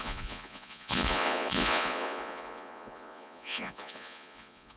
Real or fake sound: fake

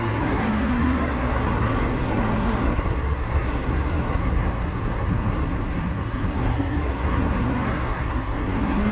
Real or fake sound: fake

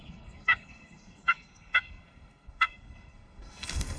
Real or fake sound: fake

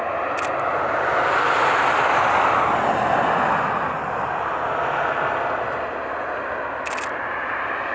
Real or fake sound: real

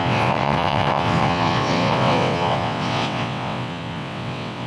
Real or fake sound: fake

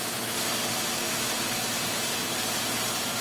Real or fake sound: real